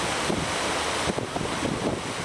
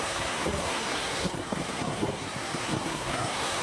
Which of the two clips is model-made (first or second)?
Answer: second